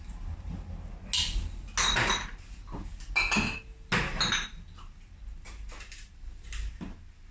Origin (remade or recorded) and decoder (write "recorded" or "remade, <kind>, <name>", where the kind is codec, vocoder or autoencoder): recorded